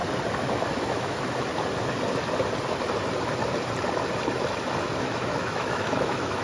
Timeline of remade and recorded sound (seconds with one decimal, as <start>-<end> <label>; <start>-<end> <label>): 0.0-0.7 recorded; 0.7-1.5 remade; 1.5-5.0 recorded; 5.0-6.4 remade